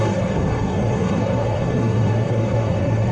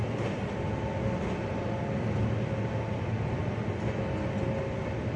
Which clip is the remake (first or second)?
first